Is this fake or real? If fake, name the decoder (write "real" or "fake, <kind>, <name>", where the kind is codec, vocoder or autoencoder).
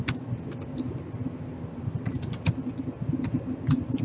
real